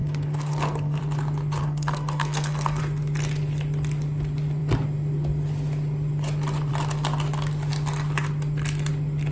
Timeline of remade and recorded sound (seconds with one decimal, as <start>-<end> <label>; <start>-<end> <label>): 0.0-1.0 remade; 1.0-1.6 recorded; 1.6-2.8 remade; 2.8-9.3 recorded